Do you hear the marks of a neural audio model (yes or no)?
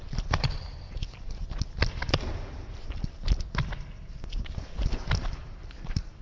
no